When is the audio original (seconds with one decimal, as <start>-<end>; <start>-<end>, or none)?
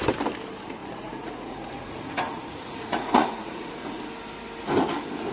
0.0-0.8; 4.0-5.3